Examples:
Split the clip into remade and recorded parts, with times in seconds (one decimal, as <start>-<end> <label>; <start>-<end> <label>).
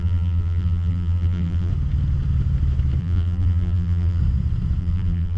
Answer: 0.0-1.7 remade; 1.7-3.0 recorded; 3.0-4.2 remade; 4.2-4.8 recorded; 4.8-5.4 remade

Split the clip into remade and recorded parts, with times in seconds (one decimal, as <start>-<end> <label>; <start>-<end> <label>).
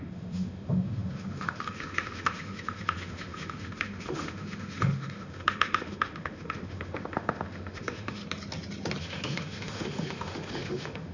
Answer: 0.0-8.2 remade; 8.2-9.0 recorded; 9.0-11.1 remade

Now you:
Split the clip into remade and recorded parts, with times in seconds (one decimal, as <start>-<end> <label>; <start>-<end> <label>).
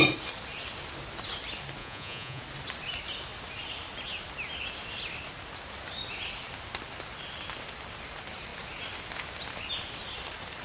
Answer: 0.0-1.8 recorded; 1.8-2.4 remade; 2.4-10.6 recorded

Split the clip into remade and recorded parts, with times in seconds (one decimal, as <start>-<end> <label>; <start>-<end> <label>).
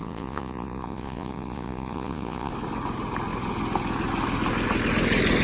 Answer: 0.0-2.5 remade; 2.5-5.4 recorded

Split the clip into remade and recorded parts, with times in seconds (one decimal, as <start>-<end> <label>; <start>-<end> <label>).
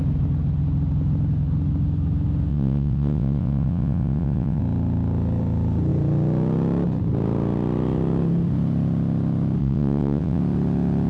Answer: 0.0-2.5 recorded; 2.5-4.6 remade; 4.6-9.6 recorded; 9.6-10.4 remade; 10.4-11.1 recorded